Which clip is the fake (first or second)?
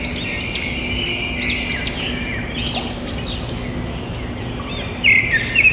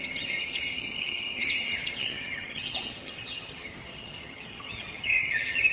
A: second